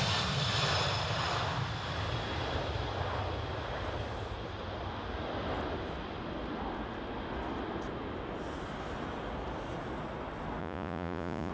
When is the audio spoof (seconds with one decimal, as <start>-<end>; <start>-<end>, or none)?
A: 10.6-11.5